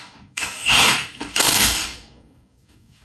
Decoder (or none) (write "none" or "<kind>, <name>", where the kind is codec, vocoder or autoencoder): codec, DAC